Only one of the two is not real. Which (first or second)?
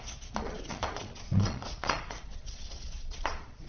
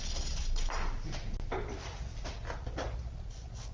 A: first